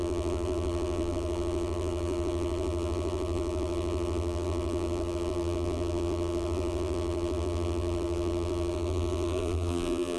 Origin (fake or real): fake